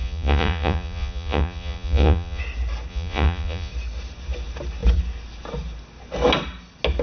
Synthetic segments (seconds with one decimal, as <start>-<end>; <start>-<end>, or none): 0.0-2.4; 2.9-3.7